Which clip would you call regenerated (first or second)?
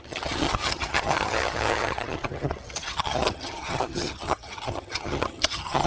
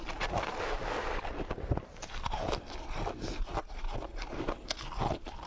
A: first